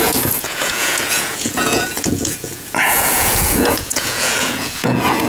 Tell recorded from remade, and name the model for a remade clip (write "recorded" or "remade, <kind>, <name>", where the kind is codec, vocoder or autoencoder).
remade, vocoder, Vocos